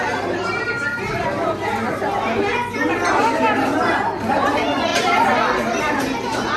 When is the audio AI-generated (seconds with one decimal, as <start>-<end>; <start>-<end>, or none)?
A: none